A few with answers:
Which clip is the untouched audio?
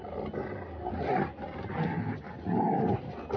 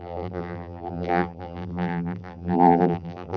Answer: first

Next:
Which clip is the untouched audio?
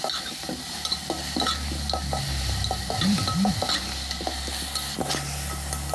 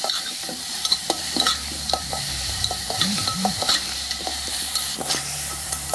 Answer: first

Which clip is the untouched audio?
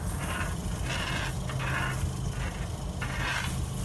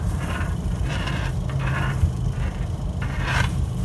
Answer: first